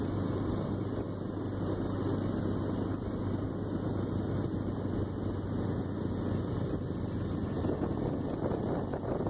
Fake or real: real